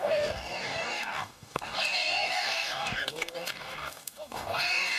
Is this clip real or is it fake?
fake